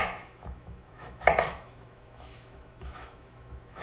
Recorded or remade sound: remade